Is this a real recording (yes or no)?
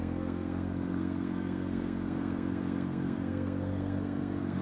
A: no